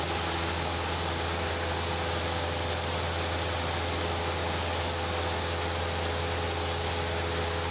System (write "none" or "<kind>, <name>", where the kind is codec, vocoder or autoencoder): none